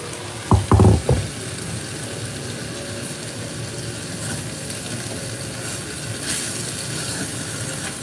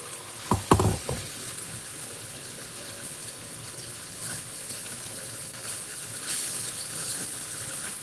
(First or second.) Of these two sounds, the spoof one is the second